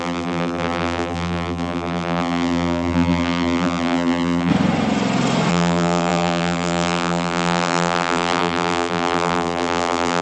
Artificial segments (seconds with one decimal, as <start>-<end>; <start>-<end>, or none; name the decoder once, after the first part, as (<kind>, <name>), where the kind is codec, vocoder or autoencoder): 0.0-4.5 (vocoder, BigVGAN v2); 5.5-10.2